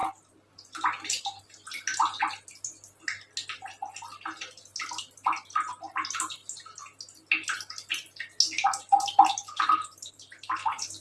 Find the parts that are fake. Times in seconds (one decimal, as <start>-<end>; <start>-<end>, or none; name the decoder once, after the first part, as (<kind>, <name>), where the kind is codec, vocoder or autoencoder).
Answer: none